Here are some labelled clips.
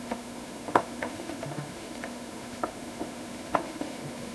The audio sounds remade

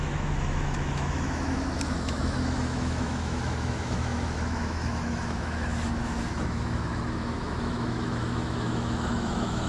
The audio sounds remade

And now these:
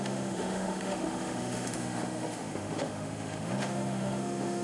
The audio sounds remade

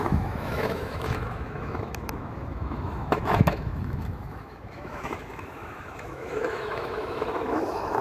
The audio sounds remade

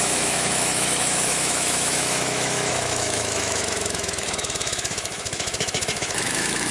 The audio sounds remade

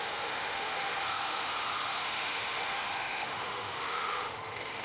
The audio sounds remade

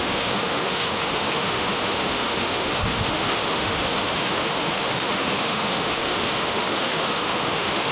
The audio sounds remade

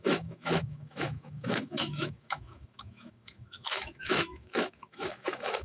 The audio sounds remade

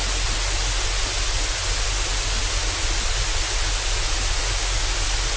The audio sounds recorded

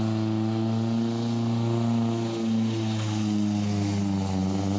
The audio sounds recorded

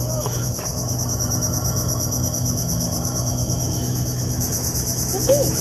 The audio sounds remade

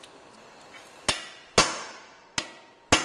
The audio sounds recorded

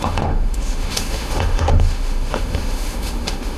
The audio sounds remade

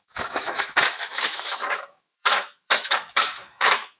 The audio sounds remade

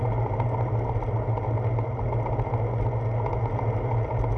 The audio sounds recorded